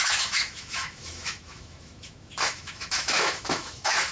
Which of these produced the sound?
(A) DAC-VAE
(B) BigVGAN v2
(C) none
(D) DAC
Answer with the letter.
A